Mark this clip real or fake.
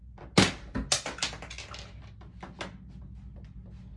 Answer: real